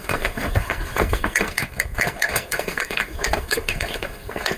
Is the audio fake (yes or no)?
yes